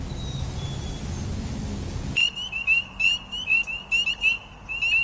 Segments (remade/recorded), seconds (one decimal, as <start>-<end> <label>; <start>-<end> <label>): 0.0-5.0 recorded